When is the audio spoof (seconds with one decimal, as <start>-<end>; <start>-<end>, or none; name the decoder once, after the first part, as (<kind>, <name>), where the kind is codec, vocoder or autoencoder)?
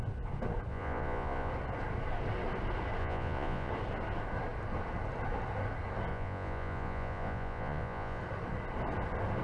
0.7-1.5 (vocoder, Vocos); 3.0-3.7; 6.1-8.2